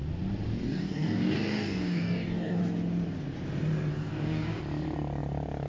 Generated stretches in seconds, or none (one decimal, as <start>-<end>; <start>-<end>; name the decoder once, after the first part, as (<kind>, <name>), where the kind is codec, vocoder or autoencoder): 0.6-2.6 (codec, DAC); 3.9-4.6